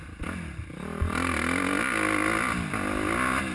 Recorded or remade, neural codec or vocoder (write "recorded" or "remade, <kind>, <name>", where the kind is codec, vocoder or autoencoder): recorded